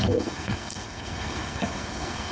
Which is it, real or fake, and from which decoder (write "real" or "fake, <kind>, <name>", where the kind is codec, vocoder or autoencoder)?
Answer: fake, codec, SNAC